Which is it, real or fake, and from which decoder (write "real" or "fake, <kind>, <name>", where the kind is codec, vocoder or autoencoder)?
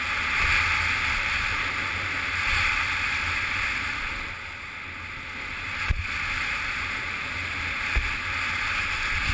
real